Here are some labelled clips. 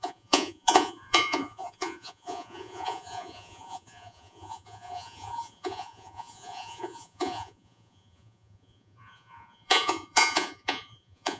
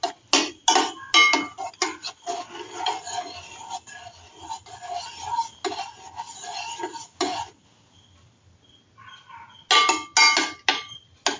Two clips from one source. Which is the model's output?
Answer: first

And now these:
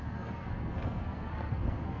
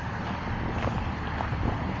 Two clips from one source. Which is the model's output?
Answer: first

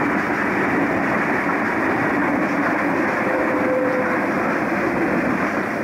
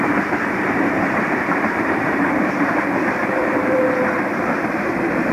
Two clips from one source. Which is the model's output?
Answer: second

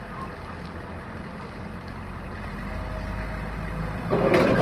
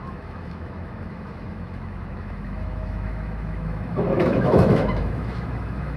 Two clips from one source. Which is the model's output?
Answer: second